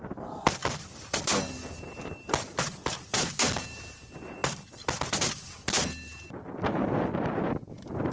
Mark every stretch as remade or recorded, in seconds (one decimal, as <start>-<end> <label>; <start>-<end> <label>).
0.0-8.1 recorded